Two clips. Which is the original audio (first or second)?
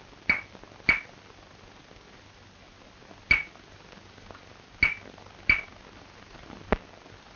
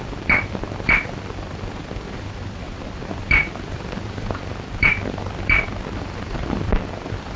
first